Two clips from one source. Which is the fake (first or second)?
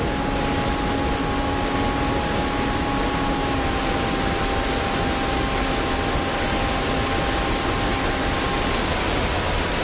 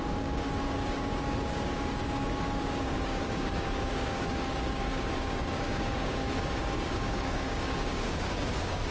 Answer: second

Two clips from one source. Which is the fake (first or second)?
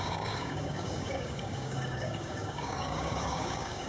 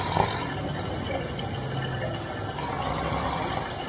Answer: first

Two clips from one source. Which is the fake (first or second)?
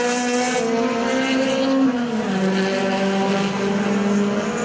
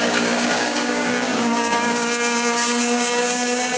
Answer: second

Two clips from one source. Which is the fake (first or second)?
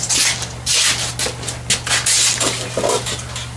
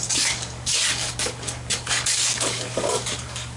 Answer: second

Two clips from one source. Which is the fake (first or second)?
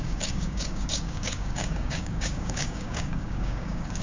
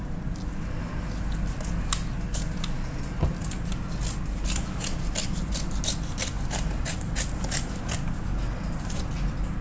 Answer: first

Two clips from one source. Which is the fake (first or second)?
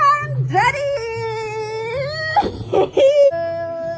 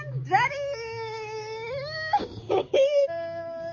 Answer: second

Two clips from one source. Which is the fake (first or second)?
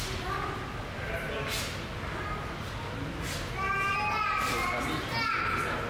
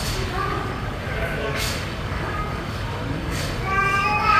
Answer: second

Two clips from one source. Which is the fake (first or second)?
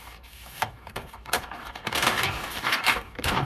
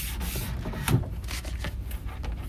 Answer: first